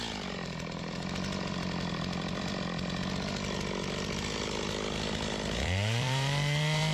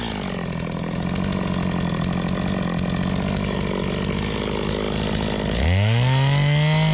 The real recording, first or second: second